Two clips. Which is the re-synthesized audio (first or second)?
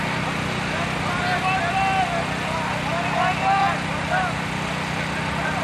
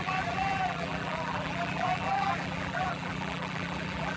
second